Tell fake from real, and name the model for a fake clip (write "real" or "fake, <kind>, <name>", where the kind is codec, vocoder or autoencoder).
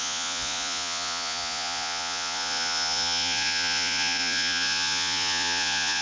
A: fake, vocoder, Vocos